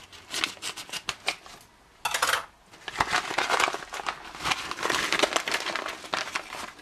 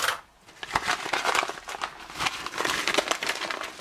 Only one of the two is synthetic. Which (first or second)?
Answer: second